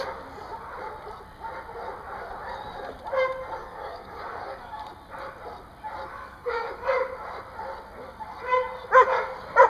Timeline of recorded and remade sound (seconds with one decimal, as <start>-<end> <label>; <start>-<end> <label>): 0.0-3.6 recorded; 3.6-4.8 remade; 4.8-6.1 recorded; 6.1-6.9 remade; 6.9-9.7 recorded